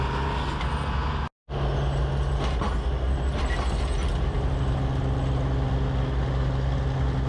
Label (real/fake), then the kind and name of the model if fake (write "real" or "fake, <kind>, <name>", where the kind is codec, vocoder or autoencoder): real